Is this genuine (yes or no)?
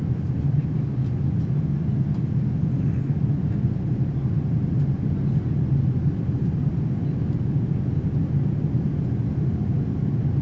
yes